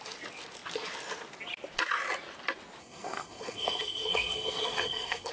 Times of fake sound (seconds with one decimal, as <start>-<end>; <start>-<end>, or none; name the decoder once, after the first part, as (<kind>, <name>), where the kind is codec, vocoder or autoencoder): 2.8-5.3 (codec, SNAC)